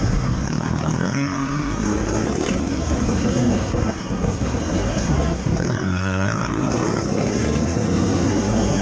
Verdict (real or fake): fake